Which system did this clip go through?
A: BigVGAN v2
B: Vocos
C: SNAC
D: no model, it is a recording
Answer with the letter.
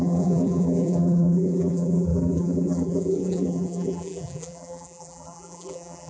A